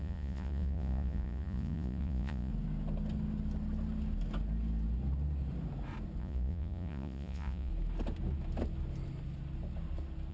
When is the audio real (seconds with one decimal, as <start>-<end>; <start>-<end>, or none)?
2.5-6.2; 7.7-10.3